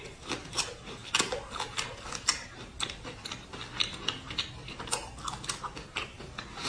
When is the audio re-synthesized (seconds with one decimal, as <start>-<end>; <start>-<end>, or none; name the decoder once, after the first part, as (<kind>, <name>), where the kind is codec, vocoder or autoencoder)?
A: none